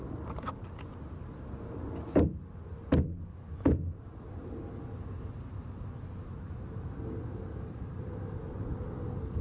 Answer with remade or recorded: recorded